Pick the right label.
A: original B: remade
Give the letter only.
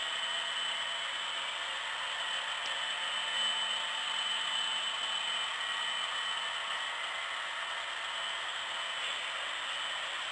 A